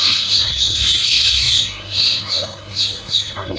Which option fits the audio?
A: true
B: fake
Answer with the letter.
B